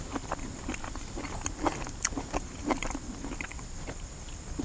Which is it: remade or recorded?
recorded